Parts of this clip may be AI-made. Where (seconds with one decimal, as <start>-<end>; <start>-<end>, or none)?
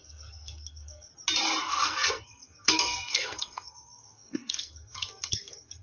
0.0-1.1; 1.6-5.8